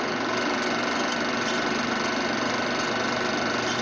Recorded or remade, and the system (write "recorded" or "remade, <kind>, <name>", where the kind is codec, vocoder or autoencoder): recorded